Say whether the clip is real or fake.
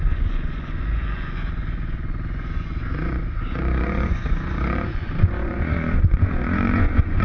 fake